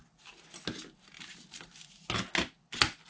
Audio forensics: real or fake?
real